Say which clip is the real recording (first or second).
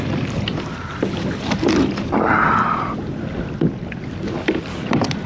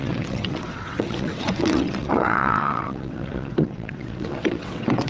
first